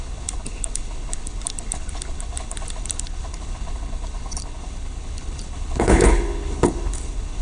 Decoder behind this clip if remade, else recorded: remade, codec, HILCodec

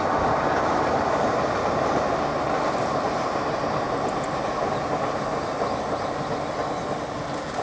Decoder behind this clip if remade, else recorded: recorded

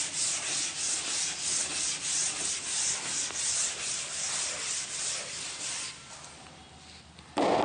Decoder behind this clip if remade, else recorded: recorded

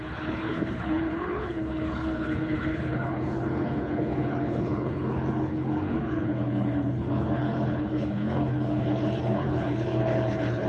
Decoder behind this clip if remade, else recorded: remade, codec, HILCodec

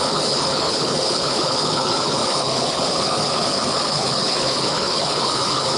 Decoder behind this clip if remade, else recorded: remade, codec, HILCodec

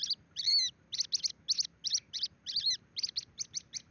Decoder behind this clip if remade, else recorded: recorded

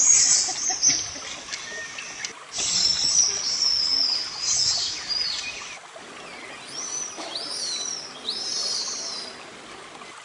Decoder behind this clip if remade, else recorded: recorded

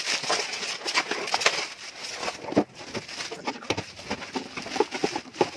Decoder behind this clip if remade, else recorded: recorded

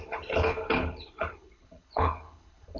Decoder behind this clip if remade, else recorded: remade, codec, HILCodec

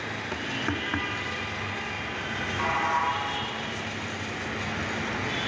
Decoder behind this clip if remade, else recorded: recorded